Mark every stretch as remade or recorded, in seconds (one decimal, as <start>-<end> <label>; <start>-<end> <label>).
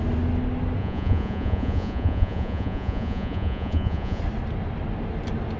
0.0-0.8 recorded; 0.8-4.2 remade; 4.2-5.6 recorded